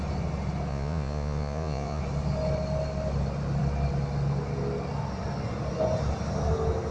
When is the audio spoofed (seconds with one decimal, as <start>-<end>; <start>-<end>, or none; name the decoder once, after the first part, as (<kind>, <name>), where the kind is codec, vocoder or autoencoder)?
0.7-2.0 (vocoder, Vocos)